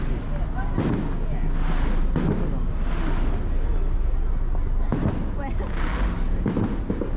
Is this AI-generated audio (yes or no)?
no